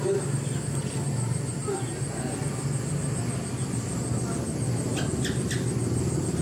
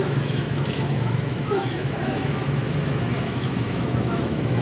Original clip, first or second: first